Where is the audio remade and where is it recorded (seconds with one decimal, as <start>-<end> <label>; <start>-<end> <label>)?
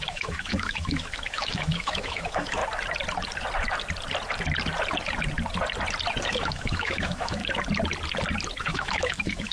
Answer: 0.0-2.6 remade; 2.6-6.2 recorded; 6.2-7.4 remade; 7.4-8.6 recorded; 8.6-9.5 remade